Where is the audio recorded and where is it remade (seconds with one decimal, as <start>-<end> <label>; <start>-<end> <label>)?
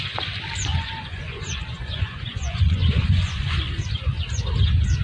0.0-0.7 recorded; 0.7-3.7 remade; 3.7-5.0 recorded